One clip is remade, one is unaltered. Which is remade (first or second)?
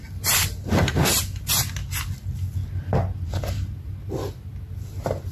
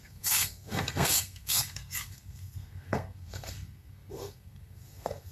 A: second